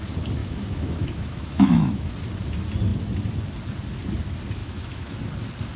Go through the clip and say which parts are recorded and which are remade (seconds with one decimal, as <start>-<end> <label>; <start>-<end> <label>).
0.0-0.4 recorded; 0.4-2.1 remade; 2.1-4.6 recorded; 4.6-5.2 remade; 5.2-5.8 recorded